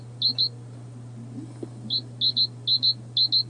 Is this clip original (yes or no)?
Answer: yes